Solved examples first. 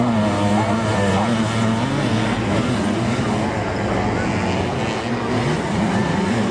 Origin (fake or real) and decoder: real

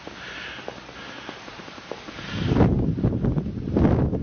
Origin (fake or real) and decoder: real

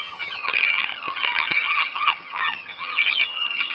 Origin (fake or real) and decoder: fake, vocoder, HiFi-GAN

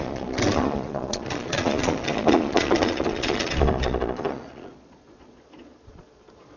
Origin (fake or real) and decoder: fake, vocoder, Vocos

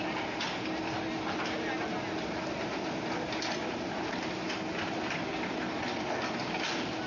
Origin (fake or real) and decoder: real